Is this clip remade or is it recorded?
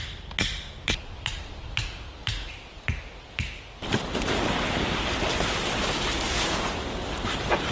recorded